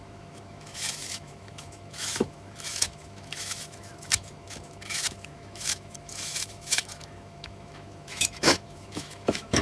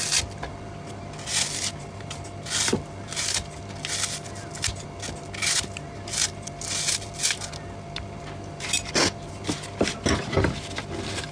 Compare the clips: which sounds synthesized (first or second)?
first